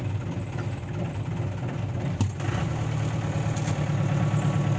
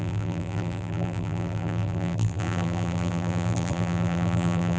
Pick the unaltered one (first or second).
first